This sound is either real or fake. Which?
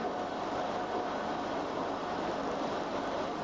real